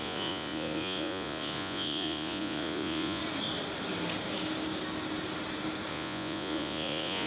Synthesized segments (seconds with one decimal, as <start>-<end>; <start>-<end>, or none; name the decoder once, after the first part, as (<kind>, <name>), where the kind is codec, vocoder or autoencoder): 0.0-3.2 (vocoder, Vocos); 5.9-7.3